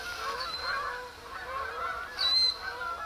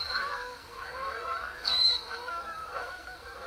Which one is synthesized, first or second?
second